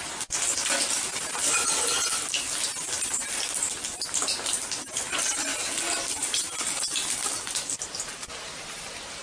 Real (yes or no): yes